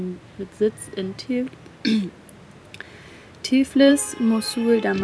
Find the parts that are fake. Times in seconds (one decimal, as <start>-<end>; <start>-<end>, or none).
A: none